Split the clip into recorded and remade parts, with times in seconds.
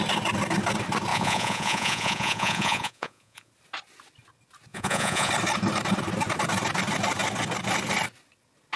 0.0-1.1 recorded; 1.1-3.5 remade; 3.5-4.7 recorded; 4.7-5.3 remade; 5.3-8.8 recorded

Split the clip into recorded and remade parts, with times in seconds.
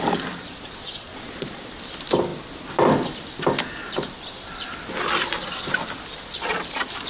0.0-0.8 recorded; 0.8-1.7 remade; 1.7-7.1 recorded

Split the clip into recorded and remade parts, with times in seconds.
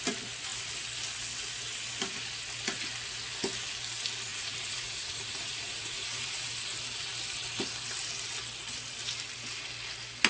0.0-4.3 recorded; 4.3-6.5 remade; 6.5-10.3 recorded